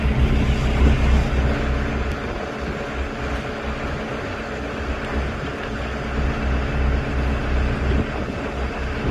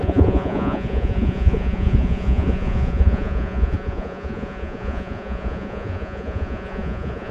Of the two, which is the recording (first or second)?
first